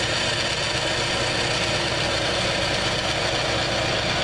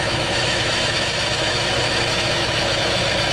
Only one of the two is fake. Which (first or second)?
second